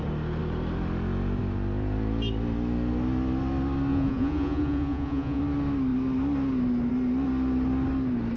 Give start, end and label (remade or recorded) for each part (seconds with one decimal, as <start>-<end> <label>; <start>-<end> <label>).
0.0-3.9 recorded; 3.9-5.4 remade; 5.4-8.4 recorded